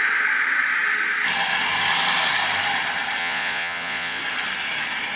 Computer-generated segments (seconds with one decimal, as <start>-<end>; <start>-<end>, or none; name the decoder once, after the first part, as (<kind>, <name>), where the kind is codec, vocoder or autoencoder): 3.2-4.2 (vocoder, Vocos)